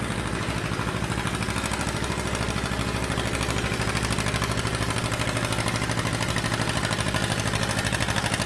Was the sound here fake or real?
real